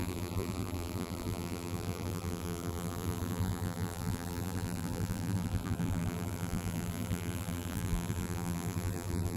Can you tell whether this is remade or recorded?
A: remade